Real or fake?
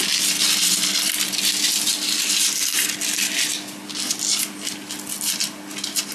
real